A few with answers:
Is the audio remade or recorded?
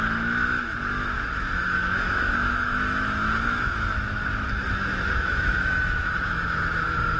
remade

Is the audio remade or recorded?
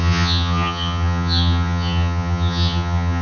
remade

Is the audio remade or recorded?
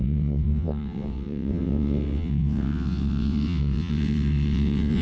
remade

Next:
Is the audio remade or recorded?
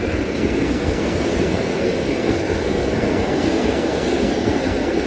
remade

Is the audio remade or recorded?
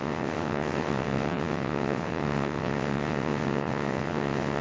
remade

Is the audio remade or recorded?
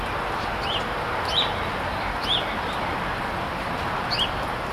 recorded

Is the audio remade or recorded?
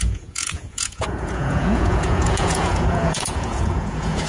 remade